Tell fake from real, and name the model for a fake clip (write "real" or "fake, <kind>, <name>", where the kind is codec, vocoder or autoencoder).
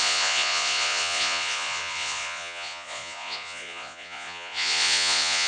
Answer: fake, vocoder, Vocos